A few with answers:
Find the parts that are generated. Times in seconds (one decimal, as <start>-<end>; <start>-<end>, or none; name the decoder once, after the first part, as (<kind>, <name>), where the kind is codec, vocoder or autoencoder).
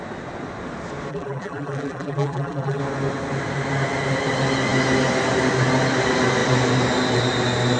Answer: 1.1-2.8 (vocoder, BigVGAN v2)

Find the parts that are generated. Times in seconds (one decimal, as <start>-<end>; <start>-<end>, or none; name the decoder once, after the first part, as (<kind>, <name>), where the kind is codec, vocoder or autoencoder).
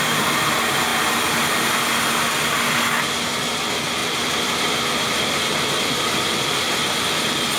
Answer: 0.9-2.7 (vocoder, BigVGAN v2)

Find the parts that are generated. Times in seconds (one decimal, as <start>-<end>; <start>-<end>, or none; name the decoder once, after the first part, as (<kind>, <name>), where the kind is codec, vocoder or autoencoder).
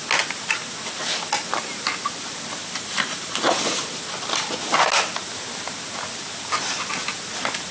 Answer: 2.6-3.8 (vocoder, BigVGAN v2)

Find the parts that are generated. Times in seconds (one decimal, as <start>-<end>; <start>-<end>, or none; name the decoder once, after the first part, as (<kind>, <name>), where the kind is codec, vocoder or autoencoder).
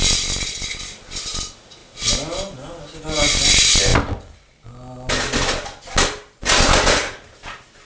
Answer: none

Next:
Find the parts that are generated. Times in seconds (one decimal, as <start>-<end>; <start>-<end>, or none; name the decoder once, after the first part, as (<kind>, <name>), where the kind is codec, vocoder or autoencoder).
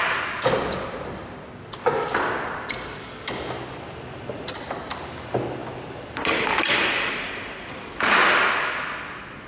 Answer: 5.6-8.2 (vocoder, BigVGAN v2)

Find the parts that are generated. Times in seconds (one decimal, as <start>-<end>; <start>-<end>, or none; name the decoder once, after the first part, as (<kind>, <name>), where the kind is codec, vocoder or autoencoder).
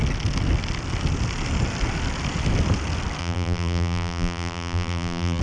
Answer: 3.2-5.4 (vocoder, BigVGAN v2)